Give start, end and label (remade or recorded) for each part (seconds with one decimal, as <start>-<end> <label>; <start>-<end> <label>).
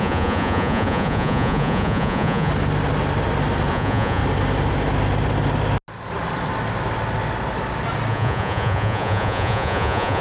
0.0-2.5 remade; 2.5-3.7 recorded; 3.7-4.2 remade; 4.2-8.1 recorded; 8.1-10.2 remade